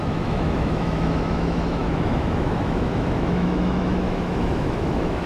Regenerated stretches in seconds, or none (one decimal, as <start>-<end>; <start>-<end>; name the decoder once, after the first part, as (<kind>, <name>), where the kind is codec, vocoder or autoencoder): 0.0-5.3 (autoencoder, DAC-VAE)